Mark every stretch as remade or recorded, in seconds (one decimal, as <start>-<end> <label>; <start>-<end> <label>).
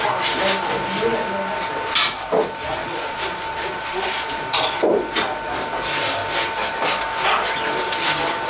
0.0-2.8 recorded; 2.8-4.4 remade; 4.4-8.5 recorded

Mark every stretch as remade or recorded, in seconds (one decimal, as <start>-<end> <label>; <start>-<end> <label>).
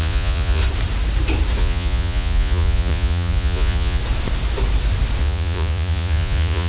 0.0-0.6 remade; 0.6-1.6 recorded; 1.6-4.0 remade; 4.0-5.2 recorded; 5.2-6.7 remade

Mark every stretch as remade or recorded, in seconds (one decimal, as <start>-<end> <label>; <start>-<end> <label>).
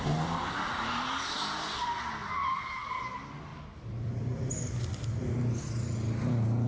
0.0-6.7 recorded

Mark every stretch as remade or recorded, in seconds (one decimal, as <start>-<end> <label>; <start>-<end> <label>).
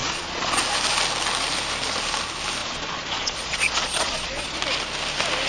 0.0-0.6 remade; 0.6-2.6 recorded; 2.6-4.6 remade; 4.6-5.5 recorded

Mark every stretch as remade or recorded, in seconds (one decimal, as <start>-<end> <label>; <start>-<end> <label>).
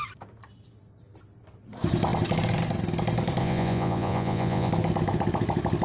0.0-3.4 recorded; 3.4-4.7 remade; 4.7-5.8 recorded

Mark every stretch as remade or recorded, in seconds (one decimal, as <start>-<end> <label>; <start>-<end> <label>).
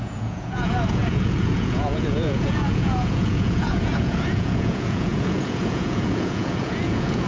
0.0-7.3 remade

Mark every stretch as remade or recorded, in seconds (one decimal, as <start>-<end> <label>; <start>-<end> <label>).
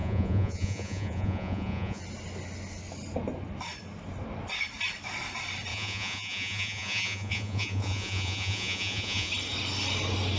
0.0-2.0 remade; 2.0-5.7 recorded; 5.7-9.3 remade; 9.3-10.4 recorded